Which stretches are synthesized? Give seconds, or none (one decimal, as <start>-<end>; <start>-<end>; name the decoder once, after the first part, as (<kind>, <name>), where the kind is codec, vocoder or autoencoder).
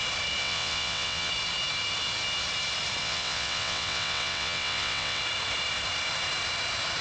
0.4-1.3 (vocoder, WaveNeXt); 3.0-5.2